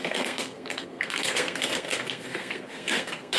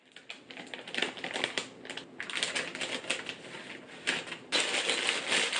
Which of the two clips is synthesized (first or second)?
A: first